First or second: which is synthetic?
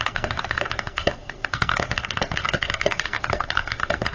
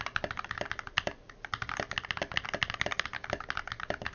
first